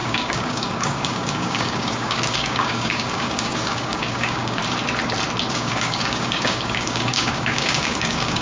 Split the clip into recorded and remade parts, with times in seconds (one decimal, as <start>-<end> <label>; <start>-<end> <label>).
0.0-4.6 remade; 4.6-5.5 recorded; 5.5-8.4 remade